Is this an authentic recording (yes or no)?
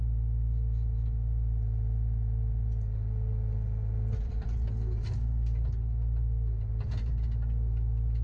yes